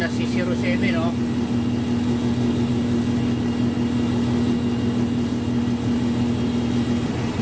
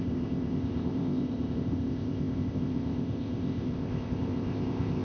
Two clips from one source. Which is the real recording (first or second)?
first